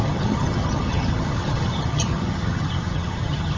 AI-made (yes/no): yes